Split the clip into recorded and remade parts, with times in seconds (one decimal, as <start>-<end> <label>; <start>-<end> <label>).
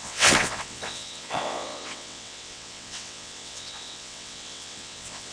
0.0-5.3 remade